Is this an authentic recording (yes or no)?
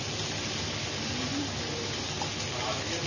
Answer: yes